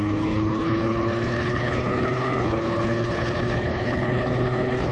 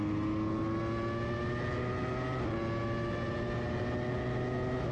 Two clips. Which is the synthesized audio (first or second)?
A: first